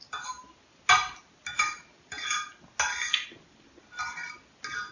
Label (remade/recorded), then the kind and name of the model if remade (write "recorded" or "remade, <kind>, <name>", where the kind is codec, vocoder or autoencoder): recorded